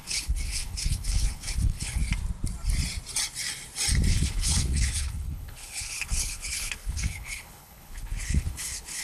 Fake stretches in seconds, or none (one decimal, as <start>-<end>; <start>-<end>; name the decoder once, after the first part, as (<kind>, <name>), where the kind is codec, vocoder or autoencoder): 0.0-2.0 (codec, HILCodec); 4.1-9.0